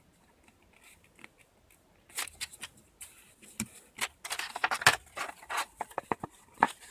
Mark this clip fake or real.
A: real